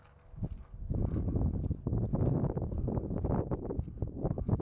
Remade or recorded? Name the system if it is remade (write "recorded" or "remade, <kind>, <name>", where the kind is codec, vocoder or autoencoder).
recorded